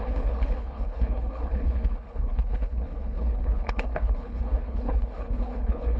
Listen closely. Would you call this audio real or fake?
fake